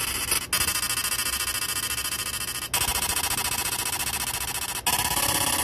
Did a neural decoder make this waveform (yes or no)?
no